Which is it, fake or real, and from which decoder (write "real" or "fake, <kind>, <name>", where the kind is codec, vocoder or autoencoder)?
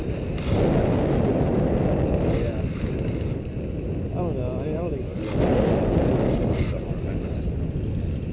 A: real